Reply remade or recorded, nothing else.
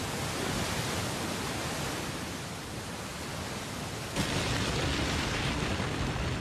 recorded